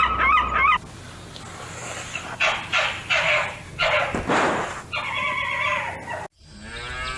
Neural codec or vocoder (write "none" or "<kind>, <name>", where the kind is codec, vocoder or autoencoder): none